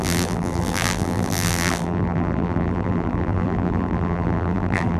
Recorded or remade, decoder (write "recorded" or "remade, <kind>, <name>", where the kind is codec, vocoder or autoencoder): remade, vocoder, BigVGAN v2